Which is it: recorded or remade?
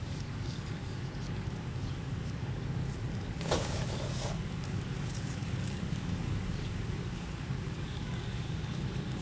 remade